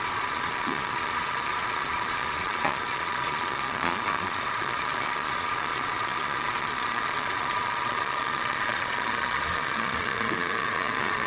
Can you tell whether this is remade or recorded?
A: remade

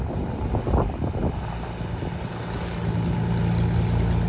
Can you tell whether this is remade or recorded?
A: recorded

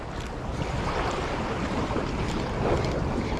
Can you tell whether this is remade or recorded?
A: recorded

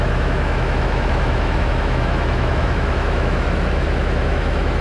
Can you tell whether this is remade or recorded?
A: remade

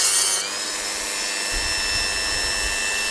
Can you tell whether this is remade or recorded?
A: recorded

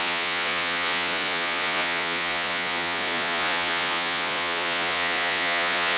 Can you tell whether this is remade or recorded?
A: remade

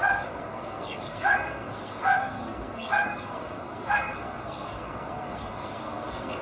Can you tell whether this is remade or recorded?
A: remade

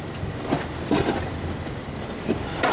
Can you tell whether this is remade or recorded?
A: recorded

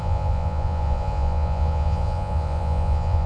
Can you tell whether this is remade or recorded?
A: remade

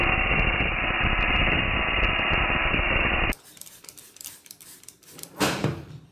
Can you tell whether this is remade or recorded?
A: remade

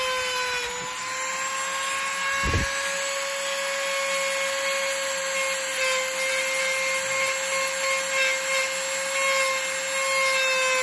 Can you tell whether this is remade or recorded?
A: recorded